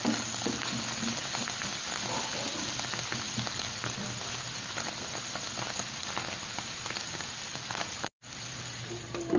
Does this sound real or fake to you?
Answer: real